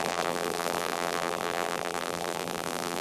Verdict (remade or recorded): remade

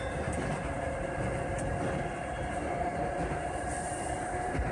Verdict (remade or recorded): recorded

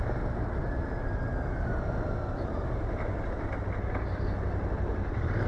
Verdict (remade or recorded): recorded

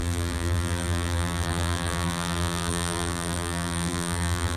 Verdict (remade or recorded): remade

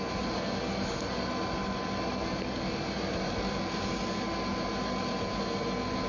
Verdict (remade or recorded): recorded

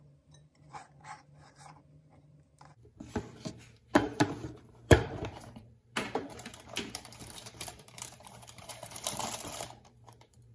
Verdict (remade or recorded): remade